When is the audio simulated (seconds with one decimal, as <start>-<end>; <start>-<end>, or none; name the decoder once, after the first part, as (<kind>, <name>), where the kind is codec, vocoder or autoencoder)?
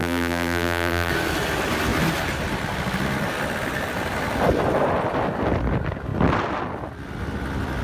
0.0-1.1 (vocoder, BigVGAN v2)